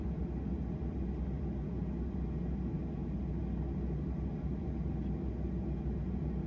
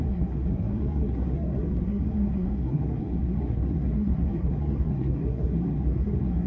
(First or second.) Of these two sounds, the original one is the first